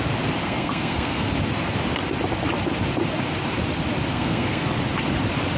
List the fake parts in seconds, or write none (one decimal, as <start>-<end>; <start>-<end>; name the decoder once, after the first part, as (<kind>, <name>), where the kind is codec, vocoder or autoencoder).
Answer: 0.4-1.3 (codec, SNAC); 4.1-4.6